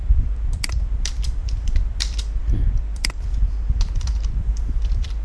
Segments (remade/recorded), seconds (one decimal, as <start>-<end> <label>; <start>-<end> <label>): 0.0-5.2 remade

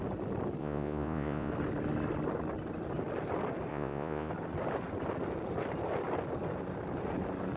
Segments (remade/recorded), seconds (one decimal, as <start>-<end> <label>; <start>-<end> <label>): 0.0-0.6 recorded; 0.6-1.5 remade; 1.5-3.7 recorded; 3.7-4.3 remade; 4.3-7.6 recorded

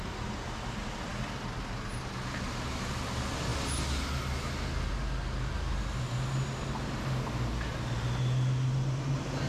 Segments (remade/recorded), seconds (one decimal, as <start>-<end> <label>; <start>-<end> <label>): 0.0-1.1 recorded; 1.1-2.0 remade; 2.0-9.5 recorded